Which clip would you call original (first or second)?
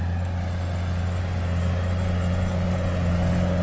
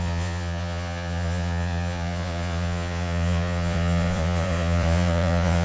first